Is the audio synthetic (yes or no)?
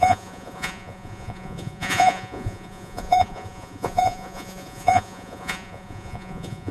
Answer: yes